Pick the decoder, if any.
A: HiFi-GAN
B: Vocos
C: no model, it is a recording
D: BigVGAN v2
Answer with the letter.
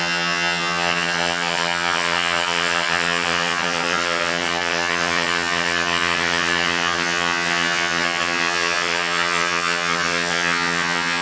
A